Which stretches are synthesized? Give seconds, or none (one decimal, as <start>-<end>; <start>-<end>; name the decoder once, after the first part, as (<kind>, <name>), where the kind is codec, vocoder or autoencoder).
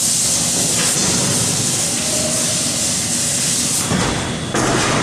none